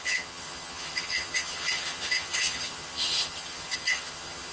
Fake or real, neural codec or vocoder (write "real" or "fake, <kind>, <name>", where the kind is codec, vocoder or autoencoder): fake, vocoder, HiFi-GAN